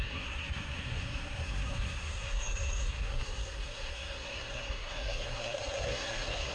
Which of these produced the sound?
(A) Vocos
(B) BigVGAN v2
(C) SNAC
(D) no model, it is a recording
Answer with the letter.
C